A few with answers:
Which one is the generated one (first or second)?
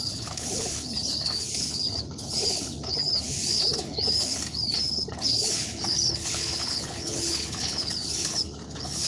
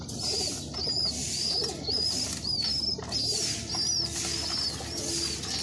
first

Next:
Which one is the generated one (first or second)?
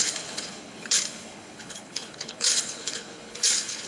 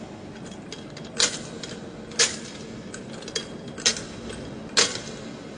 first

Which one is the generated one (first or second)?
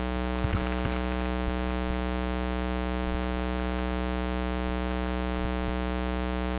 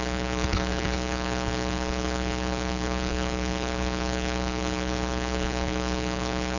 second